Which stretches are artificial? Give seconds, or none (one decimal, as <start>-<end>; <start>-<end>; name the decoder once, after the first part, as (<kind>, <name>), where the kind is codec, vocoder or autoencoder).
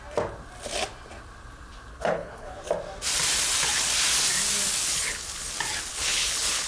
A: 1.9-2.6 (codec, HILCodec); 4.9-5.5; 5.9-6.7